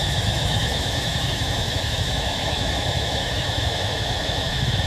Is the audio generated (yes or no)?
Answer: yes